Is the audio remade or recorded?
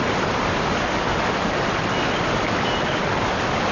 recorded